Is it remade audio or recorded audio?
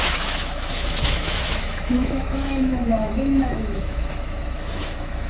remade